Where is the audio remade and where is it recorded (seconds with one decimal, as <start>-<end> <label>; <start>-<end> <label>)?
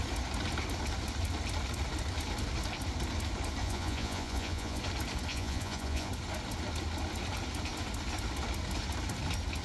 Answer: 0.0-3.6 recorded; 3.6-4.8 remade; 4.8-5.3 recorded; 5.3-6.1 remade; 6.1-9.6 recorded